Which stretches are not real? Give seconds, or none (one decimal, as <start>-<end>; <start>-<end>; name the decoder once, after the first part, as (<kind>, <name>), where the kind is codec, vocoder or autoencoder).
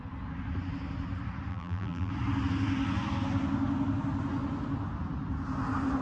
1.5-2.1 (vocoder, BigVGAN v2)